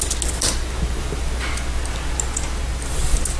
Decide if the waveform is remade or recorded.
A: recorded